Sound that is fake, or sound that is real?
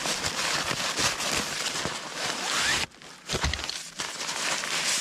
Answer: real